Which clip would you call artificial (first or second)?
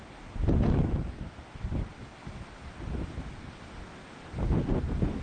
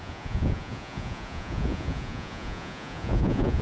second